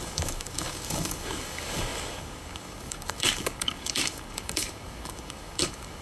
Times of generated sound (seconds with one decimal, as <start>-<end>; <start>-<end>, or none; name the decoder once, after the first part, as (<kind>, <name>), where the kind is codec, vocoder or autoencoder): 0.0-6.0 (codec, DAC)